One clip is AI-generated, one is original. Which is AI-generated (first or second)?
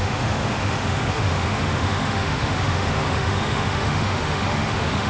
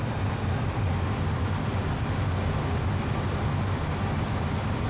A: first